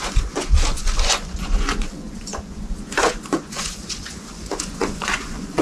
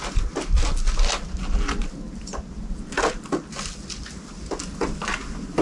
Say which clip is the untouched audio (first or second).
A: second